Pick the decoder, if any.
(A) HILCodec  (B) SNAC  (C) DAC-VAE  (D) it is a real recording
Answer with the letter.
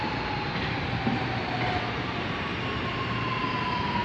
D